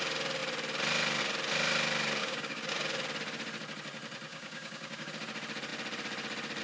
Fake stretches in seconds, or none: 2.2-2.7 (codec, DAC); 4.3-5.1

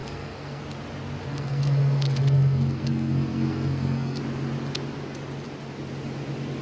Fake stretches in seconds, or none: 0.0-0.6 (codec, SNAC); 1.3-4.2

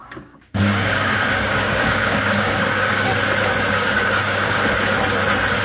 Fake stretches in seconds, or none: 0.0-3.1 (codec, DAC); 3.7-4.6

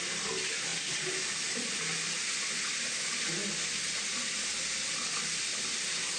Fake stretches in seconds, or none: none

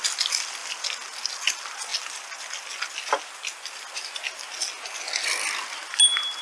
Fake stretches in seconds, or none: none

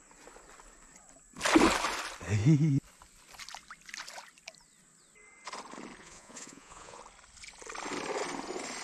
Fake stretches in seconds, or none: 6.0-7.0 (vocoder, Vocos)

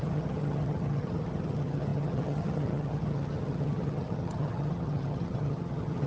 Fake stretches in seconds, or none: 0.0-6.1 (vocoder, HiFi-GAN)